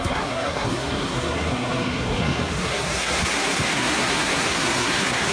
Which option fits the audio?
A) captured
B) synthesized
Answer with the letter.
B